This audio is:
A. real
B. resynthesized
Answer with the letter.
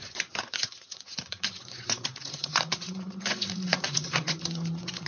B